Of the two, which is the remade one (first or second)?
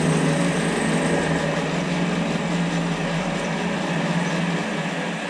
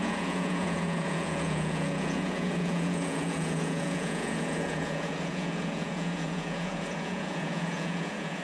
second